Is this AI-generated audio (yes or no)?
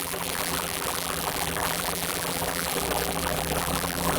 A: yes